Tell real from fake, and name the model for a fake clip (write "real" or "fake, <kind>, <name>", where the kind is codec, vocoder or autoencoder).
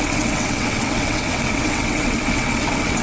fake, vocoder, WaveNeXt